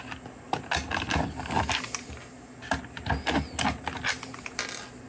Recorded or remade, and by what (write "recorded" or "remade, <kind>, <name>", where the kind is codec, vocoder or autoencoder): recorded